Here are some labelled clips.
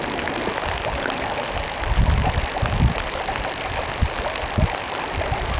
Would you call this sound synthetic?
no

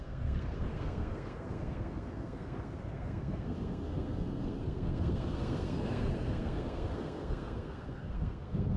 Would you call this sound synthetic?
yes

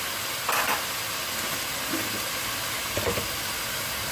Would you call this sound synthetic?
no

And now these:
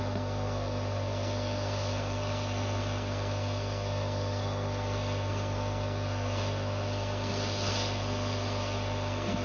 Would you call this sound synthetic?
yes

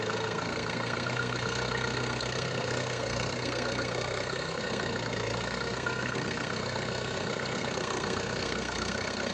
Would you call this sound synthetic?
yes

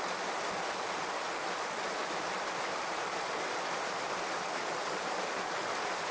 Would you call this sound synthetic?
no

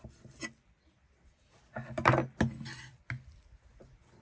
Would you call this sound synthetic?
no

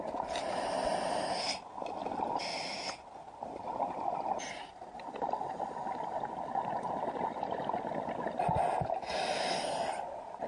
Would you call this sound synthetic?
no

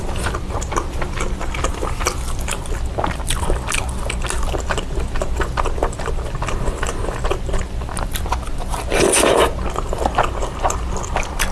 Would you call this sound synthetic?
no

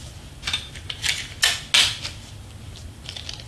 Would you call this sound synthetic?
no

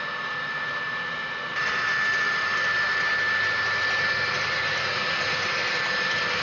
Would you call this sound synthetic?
no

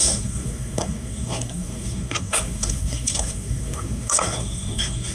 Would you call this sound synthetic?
yes